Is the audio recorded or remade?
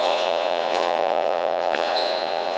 remade